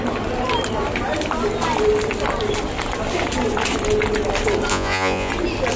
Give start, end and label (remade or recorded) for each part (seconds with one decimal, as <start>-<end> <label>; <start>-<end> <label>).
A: 0.0-4.7 recorded; 4.7-5.3 remade; 5.3-5.8 recorded

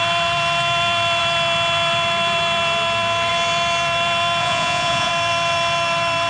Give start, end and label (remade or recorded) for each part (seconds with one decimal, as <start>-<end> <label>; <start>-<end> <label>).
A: 0.0-4.4 recorded; 4.4-5.1 remade; 5.1-6.3 recorded

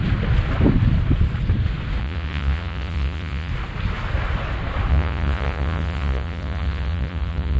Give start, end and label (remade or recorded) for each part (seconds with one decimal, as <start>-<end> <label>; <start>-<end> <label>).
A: 0.0-2.0 recorded; 2.0-3.5 remade; 3.5-4.9 recorded; 4.9-7.6 remade

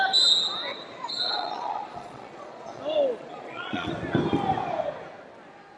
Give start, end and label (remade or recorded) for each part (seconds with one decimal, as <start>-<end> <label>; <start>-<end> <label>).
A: 0.0-0.7 recorded; 0.7-2.8 remade; 2.8-3.2 recorded; 3.2-3.9 remade; 3.9-5.8 recorded

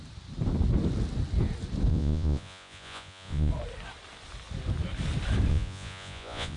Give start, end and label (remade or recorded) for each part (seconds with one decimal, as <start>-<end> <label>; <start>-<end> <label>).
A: 0.0-1.9 recorded; 1.9-3.5 remade; 3.5-5.5 recorded; 5.5-6.6 remade

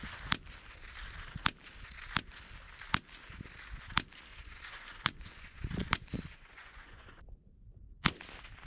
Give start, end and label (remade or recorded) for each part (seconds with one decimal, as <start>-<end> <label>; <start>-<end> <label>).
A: 0.0-4.3 recorded; 4.3-7.2 remade; 7.2-8.7 recorded

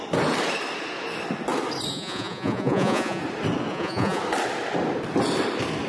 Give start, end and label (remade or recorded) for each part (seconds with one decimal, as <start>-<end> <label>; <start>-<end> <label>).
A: 0.0-1.9 recorded; 1.9-3.2 remade; 3.2-3.7 recorded; 3.7-4.2 remade; 4.2-5.9 recorded

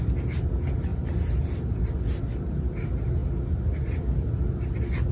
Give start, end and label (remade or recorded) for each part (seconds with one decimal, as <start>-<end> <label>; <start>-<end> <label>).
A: 0.0-5.1 recorded